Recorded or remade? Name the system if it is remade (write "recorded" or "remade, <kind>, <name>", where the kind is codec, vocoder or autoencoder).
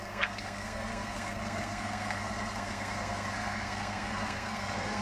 remade, codec, SNAC